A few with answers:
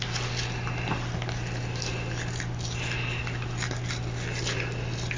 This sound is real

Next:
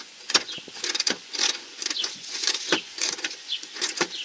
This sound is fake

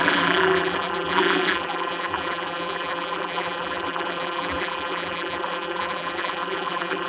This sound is fake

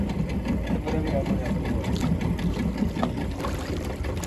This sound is real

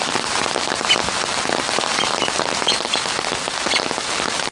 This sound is real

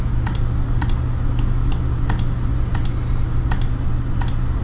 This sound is real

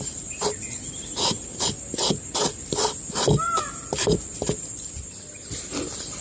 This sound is real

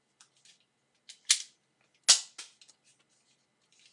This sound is real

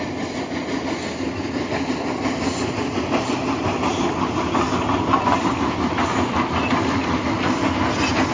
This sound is real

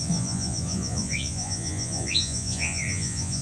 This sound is fake